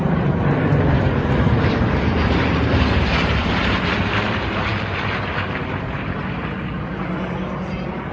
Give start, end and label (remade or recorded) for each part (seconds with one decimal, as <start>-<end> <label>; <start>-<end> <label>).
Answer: 0.0-8.1 remade